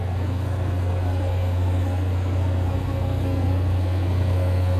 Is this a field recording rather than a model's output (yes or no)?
no